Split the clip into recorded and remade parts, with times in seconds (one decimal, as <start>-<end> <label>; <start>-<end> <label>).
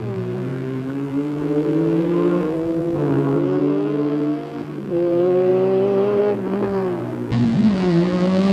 0.0-5.5 remade; 5.5-6.2 recorded; 6.2-8.5 remade